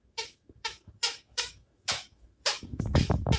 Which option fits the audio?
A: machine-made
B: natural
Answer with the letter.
A